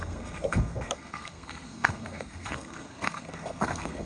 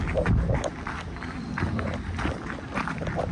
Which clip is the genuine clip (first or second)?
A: second